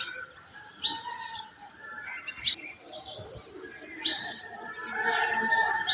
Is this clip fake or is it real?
real